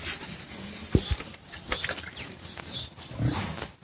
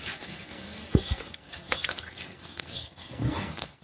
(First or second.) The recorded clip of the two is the first